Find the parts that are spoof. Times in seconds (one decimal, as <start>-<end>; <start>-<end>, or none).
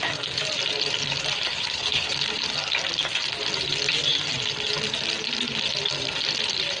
1.5-2.1